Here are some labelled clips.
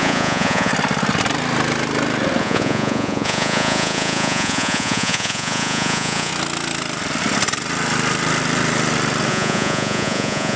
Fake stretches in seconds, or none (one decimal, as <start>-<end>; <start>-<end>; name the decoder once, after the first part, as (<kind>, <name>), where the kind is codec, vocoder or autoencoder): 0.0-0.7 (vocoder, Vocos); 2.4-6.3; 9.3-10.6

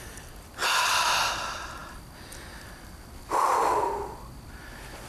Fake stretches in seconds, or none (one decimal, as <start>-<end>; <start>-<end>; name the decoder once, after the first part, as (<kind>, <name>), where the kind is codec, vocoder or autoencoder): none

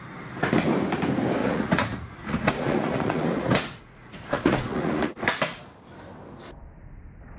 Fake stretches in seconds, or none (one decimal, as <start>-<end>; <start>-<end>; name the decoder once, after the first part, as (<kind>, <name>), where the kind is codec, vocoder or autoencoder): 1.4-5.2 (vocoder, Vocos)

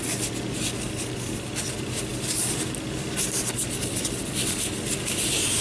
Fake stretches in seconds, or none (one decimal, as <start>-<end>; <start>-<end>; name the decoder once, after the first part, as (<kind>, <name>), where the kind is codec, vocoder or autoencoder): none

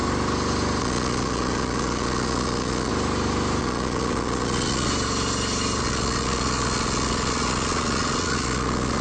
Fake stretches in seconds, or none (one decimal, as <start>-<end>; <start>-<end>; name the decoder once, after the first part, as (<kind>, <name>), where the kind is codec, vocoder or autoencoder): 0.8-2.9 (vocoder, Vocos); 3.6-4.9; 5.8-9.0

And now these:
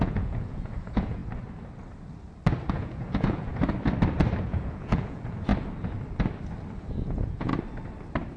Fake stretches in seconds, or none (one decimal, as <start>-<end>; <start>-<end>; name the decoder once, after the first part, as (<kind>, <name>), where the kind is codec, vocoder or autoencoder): 0.0-1.2 (vocoder, Vocos); 2.7-3.5; 4.4-5.5; 6.8-7.5